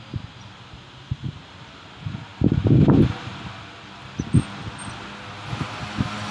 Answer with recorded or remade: recorded